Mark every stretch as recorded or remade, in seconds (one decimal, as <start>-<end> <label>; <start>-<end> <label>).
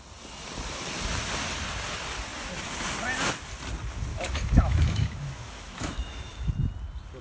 0.0-4.1 recorded; 4.1-6.5 remade; 6.5-7.2 recorded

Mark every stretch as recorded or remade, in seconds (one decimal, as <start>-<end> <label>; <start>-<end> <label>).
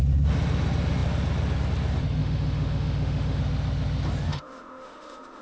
0.0-2.2 recorded; 2.2-3.4 remade; 3.4-4.3 recorded; 4.3-5.4 remade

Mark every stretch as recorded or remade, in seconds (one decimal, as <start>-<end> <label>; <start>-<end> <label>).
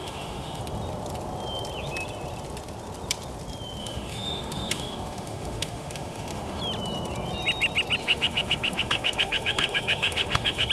0.0-0.6 remade; 0.6-3.8 recorded; 3.8-6.6 remade; 6.6-8.0 recorded; 8.0-10.7 remade